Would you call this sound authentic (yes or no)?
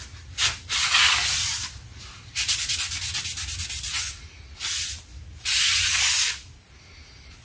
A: yes